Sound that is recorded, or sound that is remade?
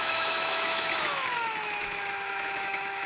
remade